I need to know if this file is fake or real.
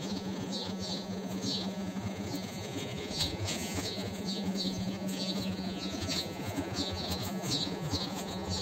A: fake